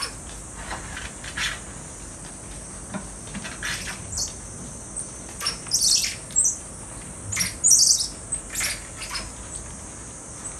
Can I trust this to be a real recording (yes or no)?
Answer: yes